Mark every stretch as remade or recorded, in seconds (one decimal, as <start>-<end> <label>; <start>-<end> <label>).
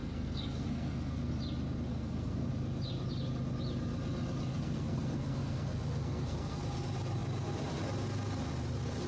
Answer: 0.0-1.3 remade; 1.3-1.9 recorded; 1.9-2.5 remade; 2.5-4.5 recorded; 4.5-6.6 remade; 6.6-9.1 recorded